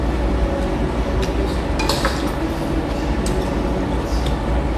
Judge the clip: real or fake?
real